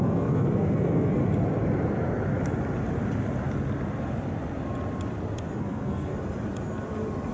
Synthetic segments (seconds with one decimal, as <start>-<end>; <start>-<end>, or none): 0.0-1.2; 5.6-6.1